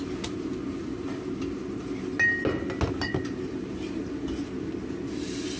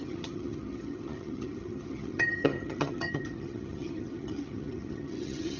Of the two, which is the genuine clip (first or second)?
first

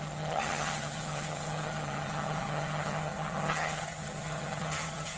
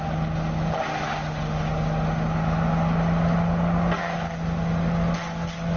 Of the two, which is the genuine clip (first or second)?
second